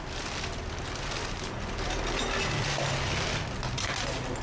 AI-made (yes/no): no